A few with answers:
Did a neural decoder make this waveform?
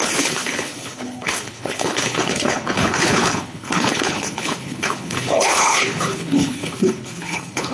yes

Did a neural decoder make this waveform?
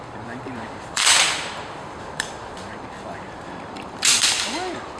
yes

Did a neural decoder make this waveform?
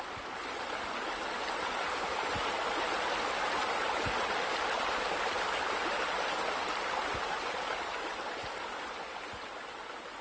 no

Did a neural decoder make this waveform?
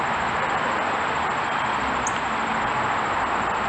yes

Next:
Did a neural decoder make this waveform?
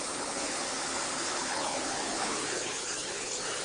yes